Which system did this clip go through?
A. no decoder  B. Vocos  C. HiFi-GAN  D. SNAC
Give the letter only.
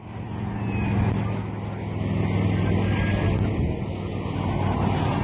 A